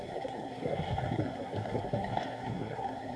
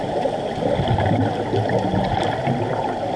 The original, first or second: second